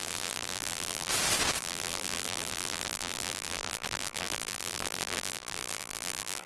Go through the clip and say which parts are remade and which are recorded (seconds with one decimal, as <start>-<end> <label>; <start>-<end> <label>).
0.0-1.1 remade; 1.1-1.6 recorded; 1.6-6.5 remade